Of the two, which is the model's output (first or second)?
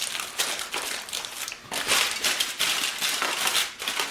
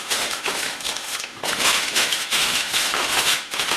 second